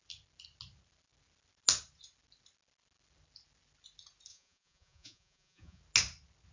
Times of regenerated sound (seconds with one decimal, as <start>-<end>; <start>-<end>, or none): 4.3-5.8